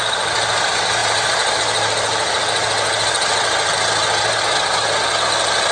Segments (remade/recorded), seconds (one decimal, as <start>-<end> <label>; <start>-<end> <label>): 0.0-5.7 recorded